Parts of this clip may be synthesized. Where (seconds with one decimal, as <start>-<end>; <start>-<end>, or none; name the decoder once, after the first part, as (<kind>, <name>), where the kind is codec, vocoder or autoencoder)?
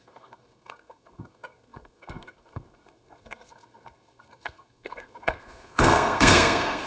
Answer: 0.0-6.9 (codec, SNAC)